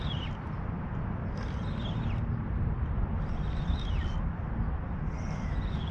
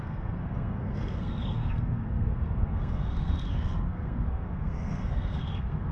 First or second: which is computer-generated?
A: second